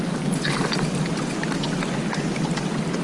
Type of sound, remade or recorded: recorded